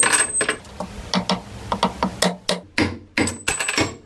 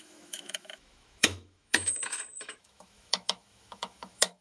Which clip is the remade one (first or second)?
second